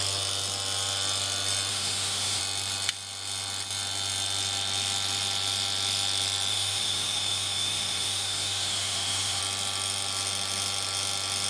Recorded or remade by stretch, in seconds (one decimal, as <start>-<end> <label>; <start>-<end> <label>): 0.0-1.7 recorded; 1.7-2.4 remade; 2.4-6.5 recorded; 6.5-9.4 remade; 9.4-11.5 recorded